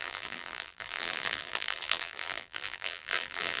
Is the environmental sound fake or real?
fake